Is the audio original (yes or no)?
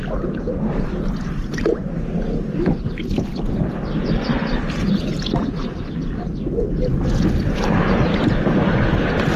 yes